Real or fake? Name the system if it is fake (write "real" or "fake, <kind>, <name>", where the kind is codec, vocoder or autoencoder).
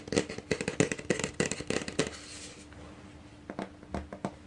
real